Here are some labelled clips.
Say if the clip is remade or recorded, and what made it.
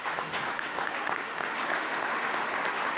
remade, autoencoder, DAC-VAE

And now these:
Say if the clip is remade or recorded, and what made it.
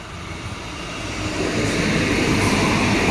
recorded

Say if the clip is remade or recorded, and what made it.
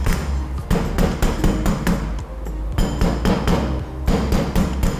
recorded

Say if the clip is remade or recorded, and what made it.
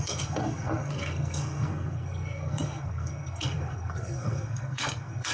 remade, codec, SNAC